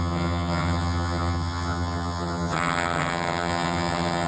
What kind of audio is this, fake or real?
fake